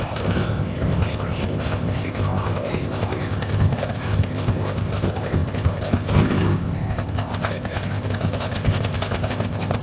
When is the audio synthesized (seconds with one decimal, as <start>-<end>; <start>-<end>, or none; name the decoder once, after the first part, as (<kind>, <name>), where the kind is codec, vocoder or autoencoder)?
0.0-9.8 (codec, ZipCodec)